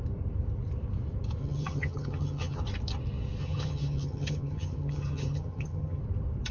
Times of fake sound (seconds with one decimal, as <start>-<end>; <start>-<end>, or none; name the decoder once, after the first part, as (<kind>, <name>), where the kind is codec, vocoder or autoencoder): 1.4-2.6 (vocoder, HiFi-GAN); 3.4-6.0